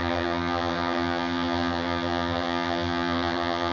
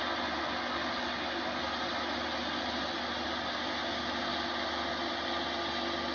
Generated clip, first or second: first